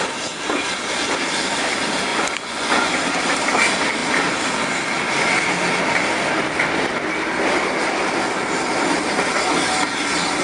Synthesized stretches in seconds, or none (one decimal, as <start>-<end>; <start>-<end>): 2.1-3.0